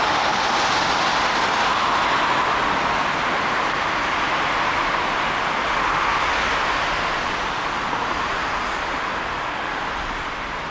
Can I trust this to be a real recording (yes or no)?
yes